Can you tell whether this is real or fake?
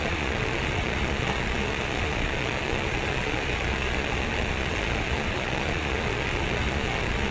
fake